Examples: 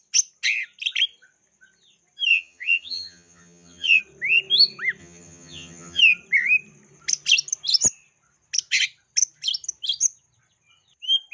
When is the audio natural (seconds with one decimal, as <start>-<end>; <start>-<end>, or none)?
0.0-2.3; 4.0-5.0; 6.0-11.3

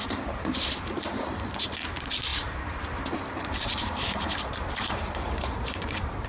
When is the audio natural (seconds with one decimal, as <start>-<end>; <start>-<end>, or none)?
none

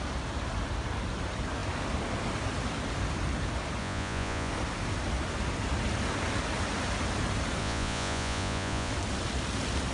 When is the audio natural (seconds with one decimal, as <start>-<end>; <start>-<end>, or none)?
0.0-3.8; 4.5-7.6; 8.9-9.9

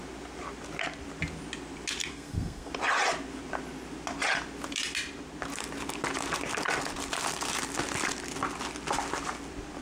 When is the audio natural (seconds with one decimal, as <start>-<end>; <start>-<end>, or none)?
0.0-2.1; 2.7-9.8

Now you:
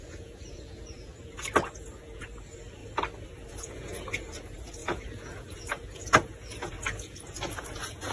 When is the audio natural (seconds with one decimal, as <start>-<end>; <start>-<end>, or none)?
1.1-1.7; 2.8-3.5